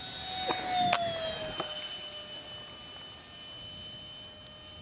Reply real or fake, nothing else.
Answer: real